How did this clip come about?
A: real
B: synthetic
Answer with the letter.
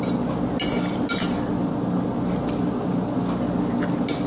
A